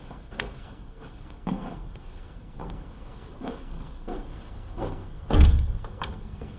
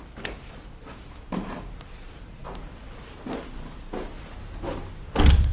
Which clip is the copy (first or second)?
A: first